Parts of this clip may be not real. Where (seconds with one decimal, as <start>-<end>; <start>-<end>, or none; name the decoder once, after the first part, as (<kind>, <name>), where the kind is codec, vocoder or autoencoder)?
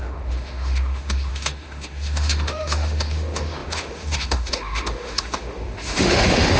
0.0-6.6 (autoencoder, DAC-VAE)